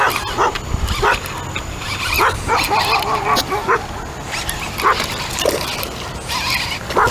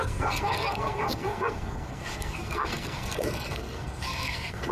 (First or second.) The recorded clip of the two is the first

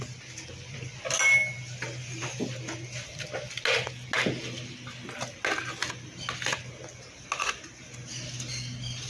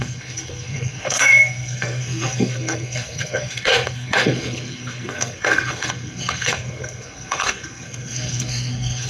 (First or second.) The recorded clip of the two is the first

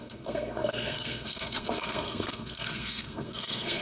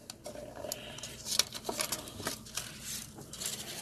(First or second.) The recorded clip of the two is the second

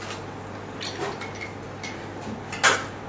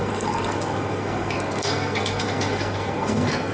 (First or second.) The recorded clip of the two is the first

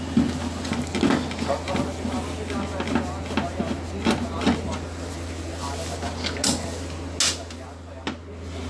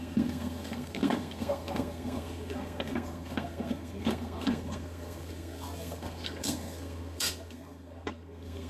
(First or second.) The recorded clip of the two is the first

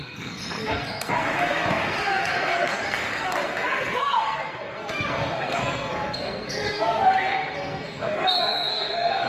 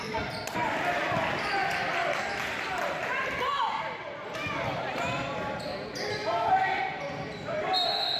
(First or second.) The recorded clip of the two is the second